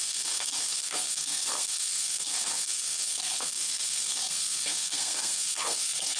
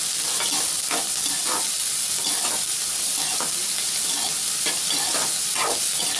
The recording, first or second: second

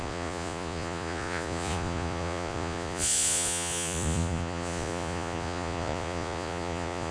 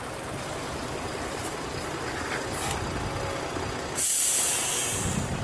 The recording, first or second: second